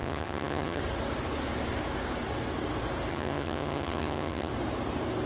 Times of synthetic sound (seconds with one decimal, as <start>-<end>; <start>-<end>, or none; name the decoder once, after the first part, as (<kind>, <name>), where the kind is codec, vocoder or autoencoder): 0.0-0.8 (vocoder, HiFi-GAN); 3.1-4.5